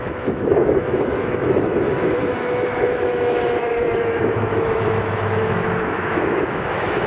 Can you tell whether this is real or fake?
fake